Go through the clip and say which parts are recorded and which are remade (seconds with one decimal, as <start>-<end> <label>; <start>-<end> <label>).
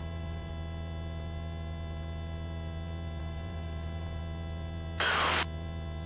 0.0-0.5 remade; 0.5-3.2 recorded; 3.2-4.2 remade; 4.2-6.1 recorded